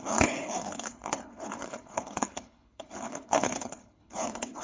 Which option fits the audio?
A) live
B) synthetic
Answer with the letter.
B